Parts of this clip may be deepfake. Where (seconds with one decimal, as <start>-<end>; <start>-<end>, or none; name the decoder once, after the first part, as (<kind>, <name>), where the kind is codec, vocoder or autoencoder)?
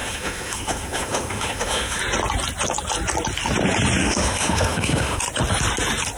0.0-2.0 (autoencoder, DAC-VAE); 4.0-5.2